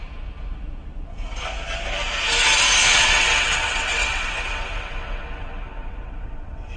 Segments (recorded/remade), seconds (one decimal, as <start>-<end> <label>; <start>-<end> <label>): 0.0-2.8 recorded; 2.8-6.8 remade